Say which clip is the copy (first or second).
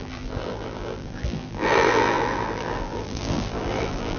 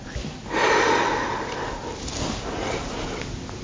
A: first